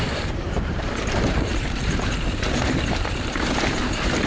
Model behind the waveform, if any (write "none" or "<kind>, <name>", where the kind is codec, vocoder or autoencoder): vocoder, BigVGAN v2